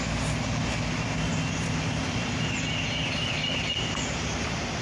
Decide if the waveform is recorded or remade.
recorded